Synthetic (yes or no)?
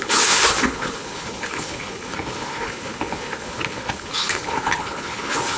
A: yes